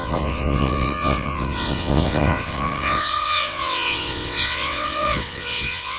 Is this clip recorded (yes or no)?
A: no